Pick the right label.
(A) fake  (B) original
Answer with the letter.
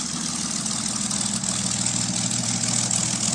B